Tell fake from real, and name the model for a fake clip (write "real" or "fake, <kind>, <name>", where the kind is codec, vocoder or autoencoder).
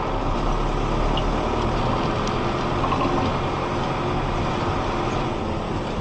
real